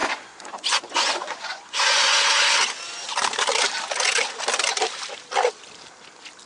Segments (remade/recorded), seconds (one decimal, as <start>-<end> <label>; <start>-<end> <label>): 0.0-2.4 remade; 2.4-6.5 recorded